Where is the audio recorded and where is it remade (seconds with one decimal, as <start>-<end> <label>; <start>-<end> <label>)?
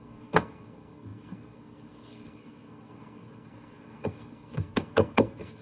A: 0.0-5.6 remade